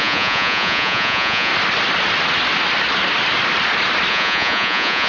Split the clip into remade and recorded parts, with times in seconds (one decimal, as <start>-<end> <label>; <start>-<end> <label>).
0.0-1.5 remade; 1.5-4.1 recorded; 4.1-5.1 remade